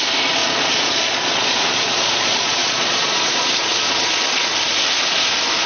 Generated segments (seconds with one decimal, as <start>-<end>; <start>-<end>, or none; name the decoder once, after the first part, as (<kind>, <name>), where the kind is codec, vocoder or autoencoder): 0.4-3.8 (vocoder, Vocos)